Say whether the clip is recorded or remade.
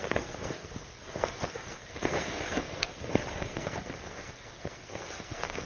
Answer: remade